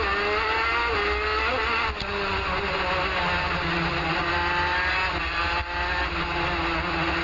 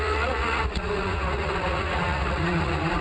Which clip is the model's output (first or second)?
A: second